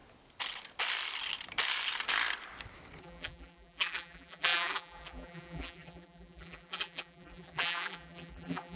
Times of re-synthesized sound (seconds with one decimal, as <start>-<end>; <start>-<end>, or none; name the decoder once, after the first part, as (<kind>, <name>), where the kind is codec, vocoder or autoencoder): 3.0-8.8 (vocoder, BigVGAN v2)